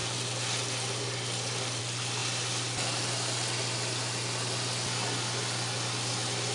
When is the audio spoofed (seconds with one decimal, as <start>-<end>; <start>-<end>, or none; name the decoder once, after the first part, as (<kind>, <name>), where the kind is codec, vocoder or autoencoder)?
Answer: none